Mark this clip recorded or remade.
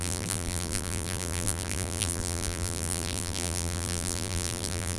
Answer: remade